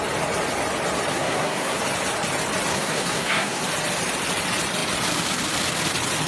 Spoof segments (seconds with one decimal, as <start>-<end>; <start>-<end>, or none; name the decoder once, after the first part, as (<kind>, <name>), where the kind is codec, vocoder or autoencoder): 1.1-1.8 (codec, SNAC); 2.7-3.6